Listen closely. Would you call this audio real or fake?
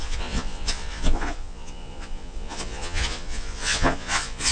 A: fake